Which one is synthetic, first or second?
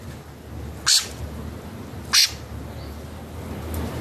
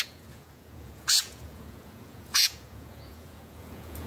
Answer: second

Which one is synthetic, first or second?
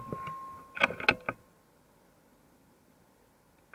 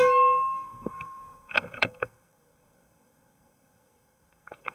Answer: second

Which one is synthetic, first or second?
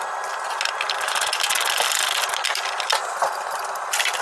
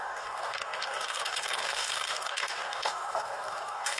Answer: second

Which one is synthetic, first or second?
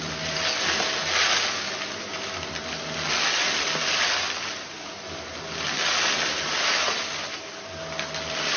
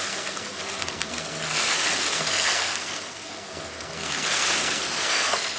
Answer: second